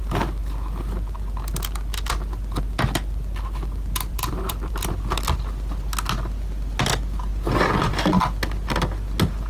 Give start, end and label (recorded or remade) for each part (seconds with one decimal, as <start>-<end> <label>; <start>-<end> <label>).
0.0-4.1 recorded; 4.1-4.9 remade; 4.9-7.3 recorded; 7.3-7.9 remade; 7.9-9.5 recorded